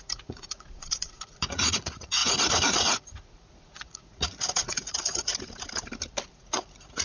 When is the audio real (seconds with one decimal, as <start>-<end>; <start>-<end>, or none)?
5.3-6.3